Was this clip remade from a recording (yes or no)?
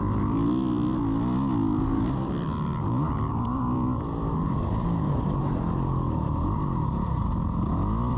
yes